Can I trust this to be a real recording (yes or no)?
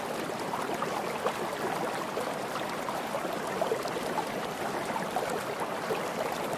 yes